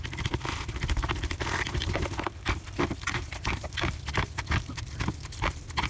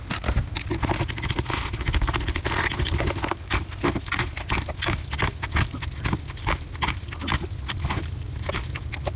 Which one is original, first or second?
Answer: second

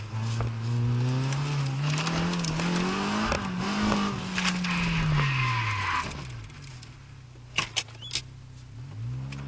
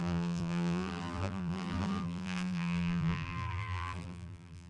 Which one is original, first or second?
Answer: first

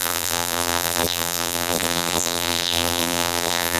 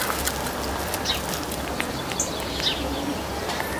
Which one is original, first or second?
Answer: second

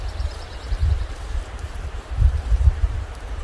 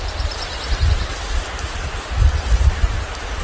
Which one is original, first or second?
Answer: second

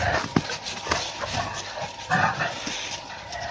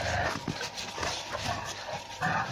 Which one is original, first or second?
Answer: second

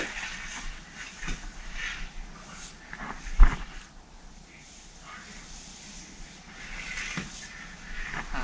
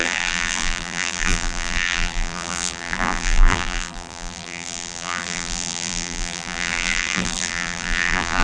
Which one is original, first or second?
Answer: first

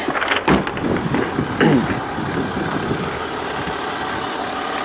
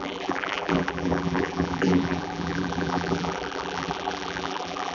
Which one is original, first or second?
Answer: first